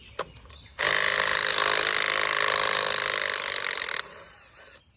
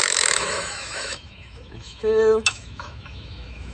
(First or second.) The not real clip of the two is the second